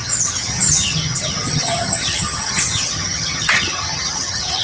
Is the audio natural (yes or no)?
no